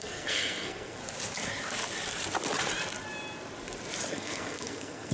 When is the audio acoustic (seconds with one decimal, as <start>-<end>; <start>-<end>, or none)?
1.0-4.1